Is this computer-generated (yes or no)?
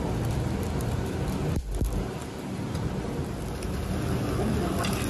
no